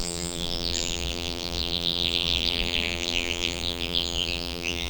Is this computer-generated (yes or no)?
yes